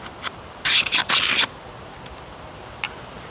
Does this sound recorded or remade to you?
recorded